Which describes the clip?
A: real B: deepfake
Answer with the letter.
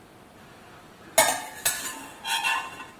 A